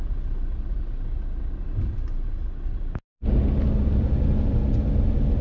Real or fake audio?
real